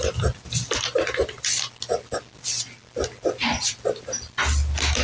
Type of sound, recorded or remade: recorded